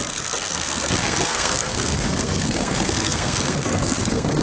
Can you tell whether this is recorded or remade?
remade